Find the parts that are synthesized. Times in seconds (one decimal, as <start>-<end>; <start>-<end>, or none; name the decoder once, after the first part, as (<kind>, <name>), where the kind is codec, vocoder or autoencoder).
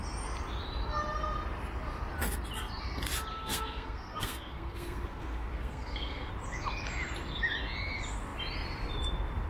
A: 3.3-6.3 (codec, SNAC)